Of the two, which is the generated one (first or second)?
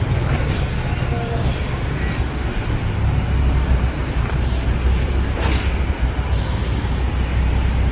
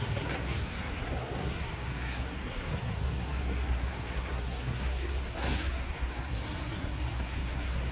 second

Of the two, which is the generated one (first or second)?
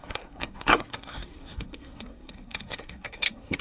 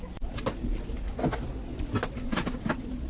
first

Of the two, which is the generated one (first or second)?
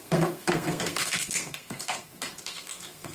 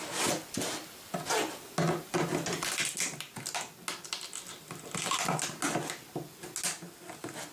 first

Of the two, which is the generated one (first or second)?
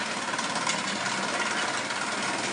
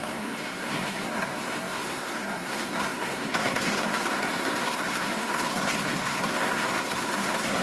second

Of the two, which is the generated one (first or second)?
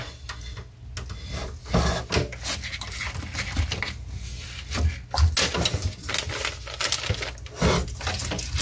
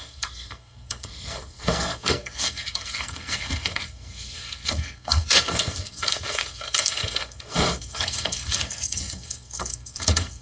second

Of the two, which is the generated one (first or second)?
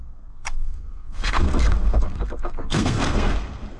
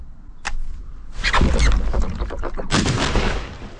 first